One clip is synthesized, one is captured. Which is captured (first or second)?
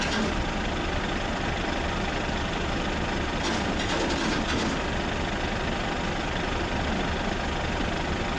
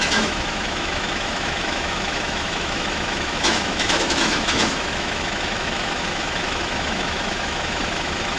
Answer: first